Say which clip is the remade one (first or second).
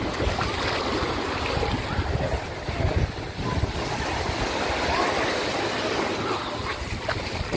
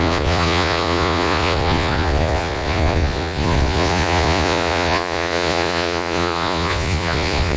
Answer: second